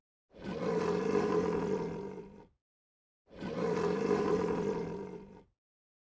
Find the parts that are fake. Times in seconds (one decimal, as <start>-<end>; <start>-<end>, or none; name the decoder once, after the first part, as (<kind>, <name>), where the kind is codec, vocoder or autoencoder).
0.0-0.5 (vocoder, BigVGAN v2); 2.2-6.0